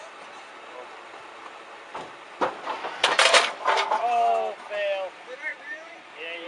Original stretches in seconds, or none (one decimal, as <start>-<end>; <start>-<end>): 0.0-5.5; 6.1-6.5